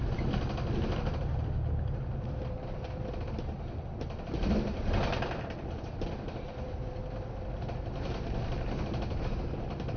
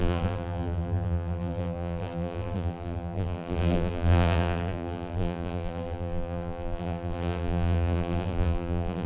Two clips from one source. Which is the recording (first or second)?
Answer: first